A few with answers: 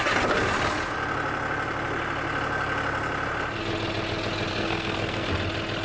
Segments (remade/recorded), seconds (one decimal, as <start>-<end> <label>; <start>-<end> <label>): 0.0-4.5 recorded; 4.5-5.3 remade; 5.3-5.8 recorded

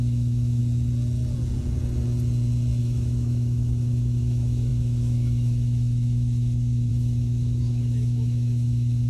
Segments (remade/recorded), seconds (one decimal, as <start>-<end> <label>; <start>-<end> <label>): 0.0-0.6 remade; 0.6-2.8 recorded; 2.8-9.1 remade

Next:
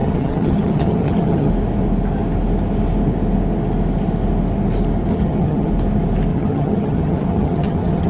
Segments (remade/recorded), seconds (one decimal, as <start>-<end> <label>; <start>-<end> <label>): 0.0-1.5 remade; 1.5-5.1 recorded; 5.1-5.7 remade; 5.7-6.3 recorded; 6.3-8.1 remade

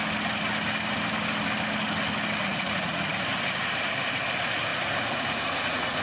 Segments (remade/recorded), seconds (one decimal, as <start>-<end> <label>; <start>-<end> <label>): 0.0-2.4 recorded; 2.4-3.1 remade; 3.1-4.7 recorded; 4.7-6.0 remade

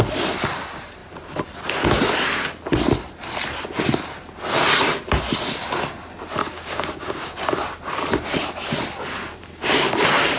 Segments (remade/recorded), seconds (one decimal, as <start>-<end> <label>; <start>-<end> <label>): 0.0-6.4 recorded; 6.4-7.3 remade; 7.3-10.4 recorded

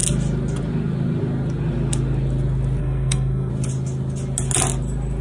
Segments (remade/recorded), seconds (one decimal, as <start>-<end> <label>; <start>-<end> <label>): 0.0-2.8 recorded; 2.8-3.5 remade; 3.5-5.2 recorded

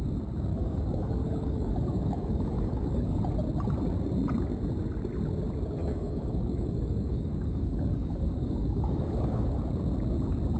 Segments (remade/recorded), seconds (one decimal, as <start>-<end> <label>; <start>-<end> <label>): 0.0-0.5 recorded; 0.5-3.2 remade; 3.2-5.8 recorded; 5.8-9.6 remade; 9.6-10.6 recorded